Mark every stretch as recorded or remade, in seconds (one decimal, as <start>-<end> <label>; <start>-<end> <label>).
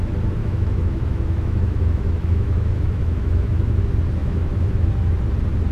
0.0-0.4 recorded; 0.4-3.8 remade; 3.8-4.2 recorded; 4.2-4.9 remade; 4.9-5.7 recorded